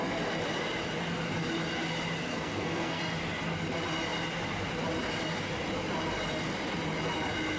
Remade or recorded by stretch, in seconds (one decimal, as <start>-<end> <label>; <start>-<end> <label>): 0.0-2.3 recorded; 2.3-3.0 remade; 3.0-7.6 recorded